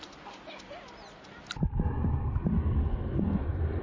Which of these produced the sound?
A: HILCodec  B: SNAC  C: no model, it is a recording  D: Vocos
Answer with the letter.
C